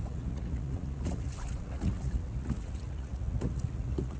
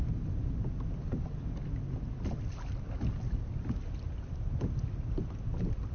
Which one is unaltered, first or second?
second